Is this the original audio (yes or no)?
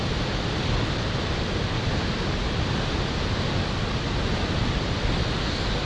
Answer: yes